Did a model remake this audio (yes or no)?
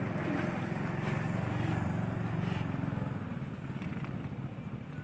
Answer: no